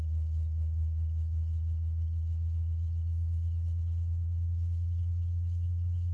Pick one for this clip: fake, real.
fake